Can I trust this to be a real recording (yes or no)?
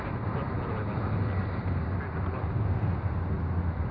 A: yes